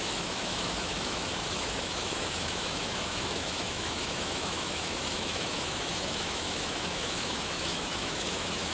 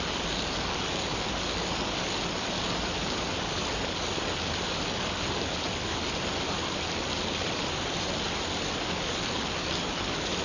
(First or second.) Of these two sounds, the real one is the second